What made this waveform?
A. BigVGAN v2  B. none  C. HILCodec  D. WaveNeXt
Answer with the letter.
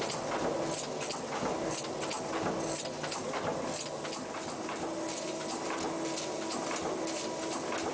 B